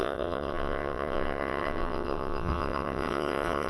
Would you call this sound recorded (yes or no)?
no